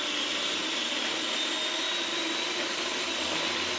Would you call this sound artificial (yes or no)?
no